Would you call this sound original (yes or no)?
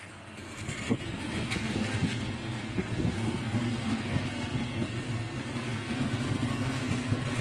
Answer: no